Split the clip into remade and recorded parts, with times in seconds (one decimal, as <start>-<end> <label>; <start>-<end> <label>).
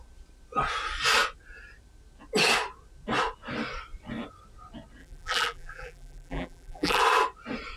0.0-5.0 recorded; 5.0-7.0 remade; 7.0-7.8 recorded